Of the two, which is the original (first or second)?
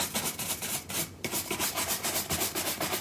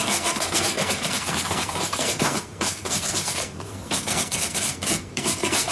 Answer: first